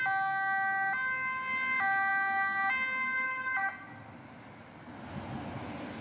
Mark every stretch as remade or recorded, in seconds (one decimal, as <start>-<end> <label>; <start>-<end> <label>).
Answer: 0.0-6.0 recorded